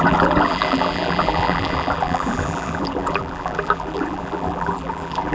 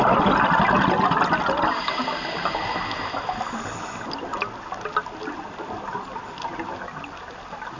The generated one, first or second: first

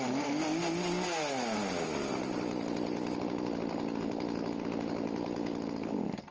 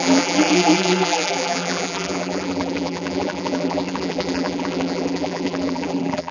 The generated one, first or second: second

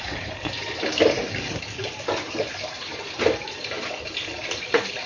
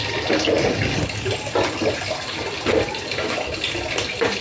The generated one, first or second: first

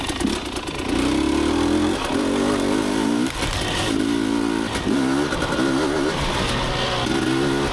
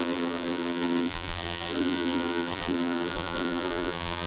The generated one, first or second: second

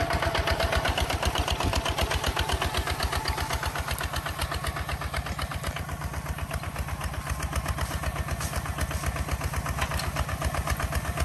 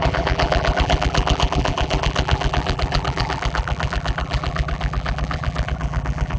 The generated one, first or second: second